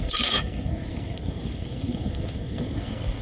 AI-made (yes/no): yes